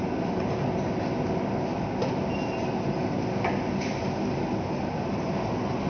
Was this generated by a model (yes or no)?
no